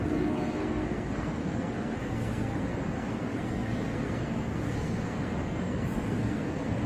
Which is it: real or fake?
fake